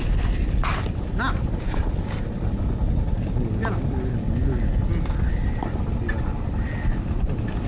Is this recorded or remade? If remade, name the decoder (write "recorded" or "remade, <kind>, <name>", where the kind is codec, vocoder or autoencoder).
recorded